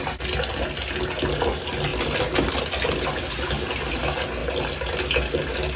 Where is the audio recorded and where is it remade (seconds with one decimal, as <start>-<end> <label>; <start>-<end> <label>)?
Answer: 0.0-5.8 recorded